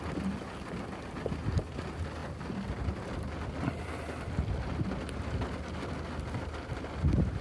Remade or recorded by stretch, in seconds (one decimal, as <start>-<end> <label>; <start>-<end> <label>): 0.0-7.4 recorded